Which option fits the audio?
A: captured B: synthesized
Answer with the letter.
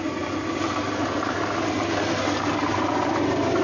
A